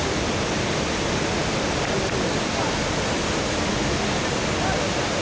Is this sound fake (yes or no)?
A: no